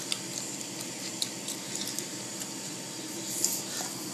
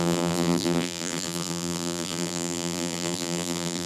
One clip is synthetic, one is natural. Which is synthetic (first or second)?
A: second